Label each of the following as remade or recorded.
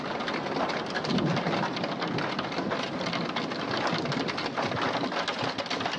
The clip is recorded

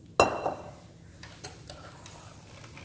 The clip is recorded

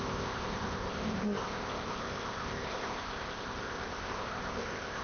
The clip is remade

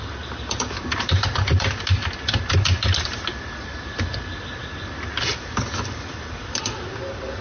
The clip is recorded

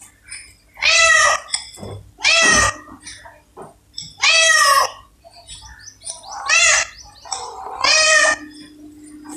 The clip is recorded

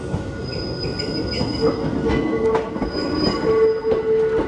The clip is recorded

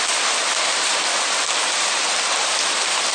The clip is recorded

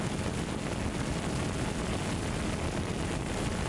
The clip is recorded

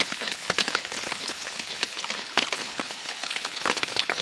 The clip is remade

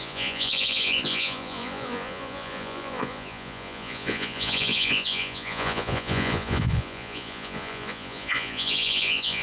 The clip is remade